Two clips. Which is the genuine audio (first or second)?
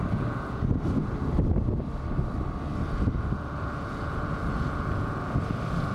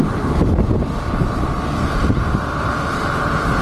first